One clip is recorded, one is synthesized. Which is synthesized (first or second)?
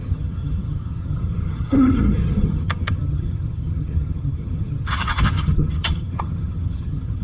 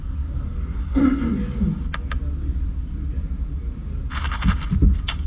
first